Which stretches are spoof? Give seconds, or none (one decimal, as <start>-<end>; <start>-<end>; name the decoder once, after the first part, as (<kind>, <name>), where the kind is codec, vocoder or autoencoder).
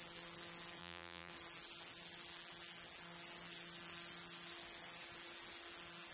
0.8-1.3 (vocoder, BigVGAN v2)